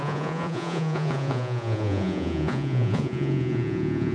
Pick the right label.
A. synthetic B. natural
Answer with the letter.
A